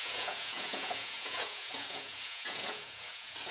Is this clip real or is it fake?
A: fake